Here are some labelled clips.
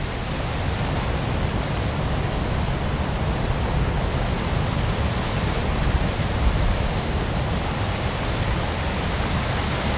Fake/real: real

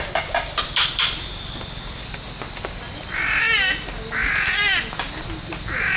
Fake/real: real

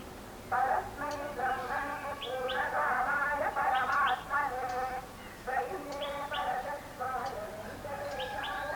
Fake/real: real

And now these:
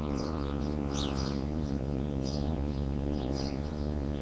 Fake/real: fake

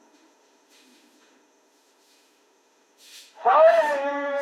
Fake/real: fake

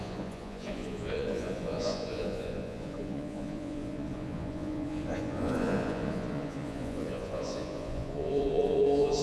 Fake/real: fake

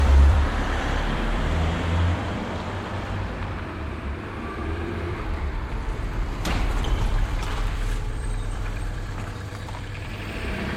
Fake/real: fake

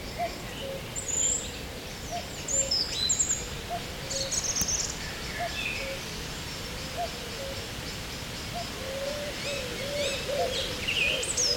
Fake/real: real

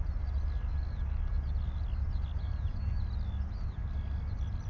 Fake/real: real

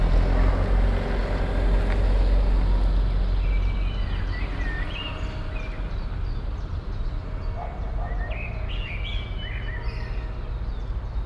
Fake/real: real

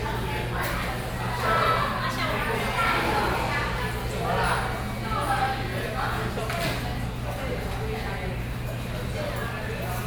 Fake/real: real